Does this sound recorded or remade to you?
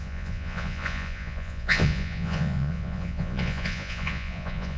remade